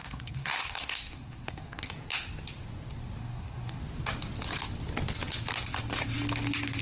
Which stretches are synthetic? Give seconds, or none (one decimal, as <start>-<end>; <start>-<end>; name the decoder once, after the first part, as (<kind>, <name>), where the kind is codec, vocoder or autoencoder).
0.0-1.9 (codec, SNAC); 3.2-3.8

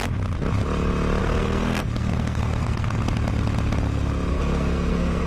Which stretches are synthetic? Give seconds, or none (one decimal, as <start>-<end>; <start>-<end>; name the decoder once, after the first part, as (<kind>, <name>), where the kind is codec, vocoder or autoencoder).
1.2-3.0 (codec, SNAC); 4.3-5.3

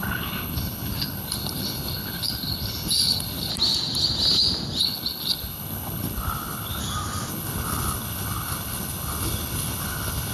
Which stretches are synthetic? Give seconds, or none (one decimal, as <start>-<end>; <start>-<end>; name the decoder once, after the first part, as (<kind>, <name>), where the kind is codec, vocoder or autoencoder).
0.0-3.5 (codec, HILCodec); 4.8-6.8; 7.3-10.3

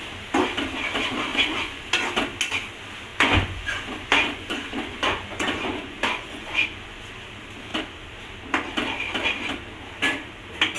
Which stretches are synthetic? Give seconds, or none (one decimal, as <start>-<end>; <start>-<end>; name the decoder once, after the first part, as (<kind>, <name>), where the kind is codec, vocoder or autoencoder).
1.3-1.9 (vocoder, Vocos); 3.1-7.1

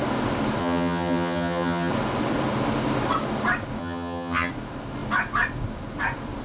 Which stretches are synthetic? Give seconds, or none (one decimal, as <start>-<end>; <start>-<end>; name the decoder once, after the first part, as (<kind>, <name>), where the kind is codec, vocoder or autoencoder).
0.6-1.9 (vocoder, HiFi-GAN); 3.8-4.5

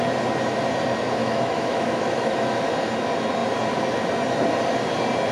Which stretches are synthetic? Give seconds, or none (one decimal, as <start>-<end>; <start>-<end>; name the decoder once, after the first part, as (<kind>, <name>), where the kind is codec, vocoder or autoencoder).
1.2-2.7 (autoencoder, DAC-VAE)